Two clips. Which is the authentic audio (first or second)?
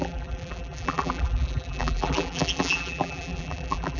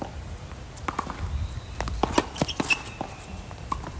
second